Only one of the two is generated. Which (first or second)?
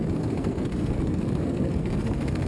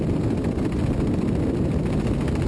first